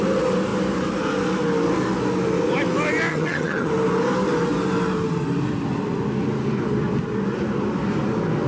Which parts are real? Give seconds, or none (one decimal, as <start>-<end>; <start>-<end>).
0.0-3.1; 3.7-8.5